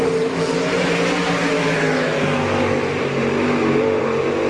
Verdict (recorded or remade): recorded